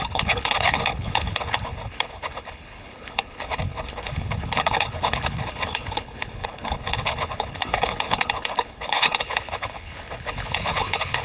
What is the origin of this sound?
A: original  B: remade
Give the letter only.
B